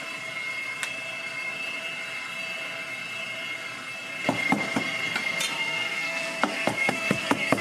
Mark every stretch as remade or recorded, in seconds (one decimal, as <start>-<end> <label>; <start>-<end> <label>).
0.0-5.6 recorded; 5.6-7.6 remade